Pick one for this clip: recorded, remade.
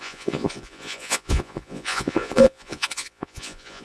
remade